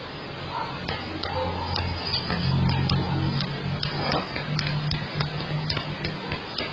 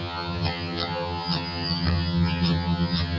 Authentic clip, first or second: first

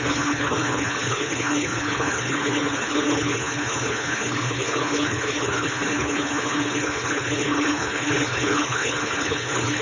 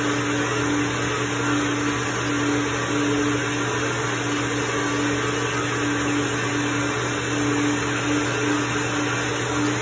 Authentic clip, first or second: second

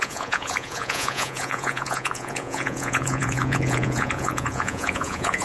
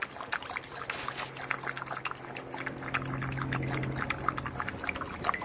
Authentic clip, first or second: second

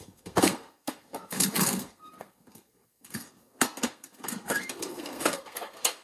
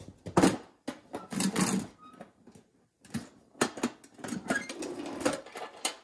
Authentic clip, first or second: second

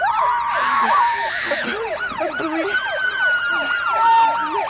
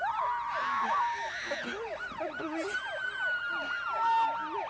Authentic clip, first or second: second